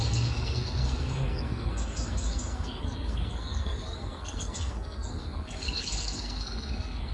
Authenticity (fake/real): fake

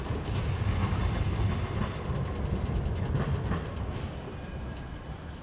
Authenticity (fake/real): real